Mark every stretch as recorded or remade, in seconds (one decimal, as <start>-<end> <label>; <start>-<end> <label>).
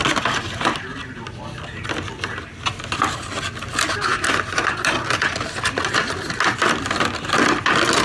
0.0-8.0 recorded